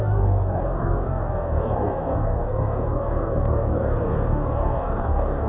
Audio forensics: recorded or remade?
remade